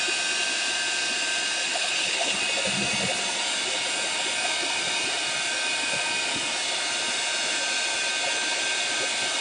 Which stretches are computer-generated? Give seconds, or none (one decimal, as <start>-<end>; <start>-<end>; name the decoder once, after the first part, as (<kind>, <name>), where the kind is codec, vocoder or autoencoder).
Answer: 1.7-2.4 (codec, HILCodec)